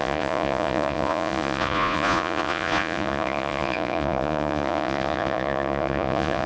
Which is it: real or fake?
fake